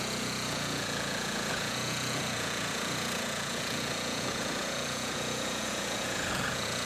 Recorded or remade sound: remade